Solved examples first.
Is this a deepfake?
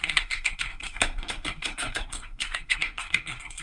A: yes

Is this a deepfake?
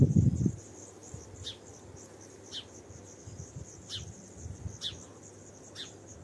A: no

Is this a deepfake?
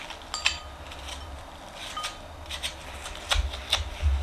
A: no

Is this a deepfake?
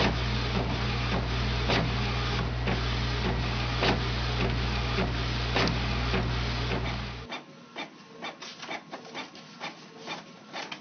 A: no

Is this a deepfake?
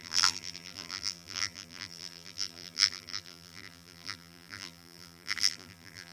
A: yes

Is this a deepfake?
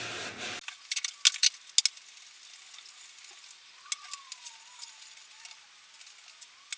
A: no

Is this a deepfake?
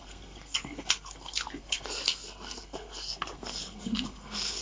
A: yes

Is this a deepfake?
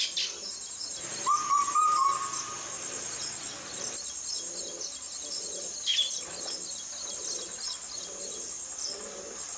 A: no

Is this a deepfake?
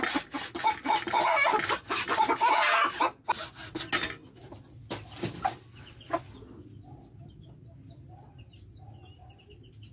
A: no